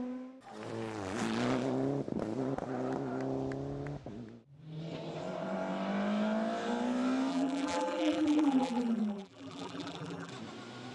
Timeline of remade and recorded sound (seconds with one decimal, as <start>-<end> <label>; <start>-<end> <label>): 0.0-7.3 recorded; 7.3-10.3 remade; 10.3-10.9 recorded